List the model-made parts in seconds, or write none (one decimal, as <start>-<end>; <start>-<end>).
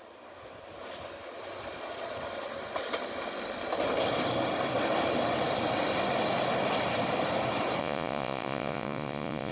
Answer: 7.8-9.5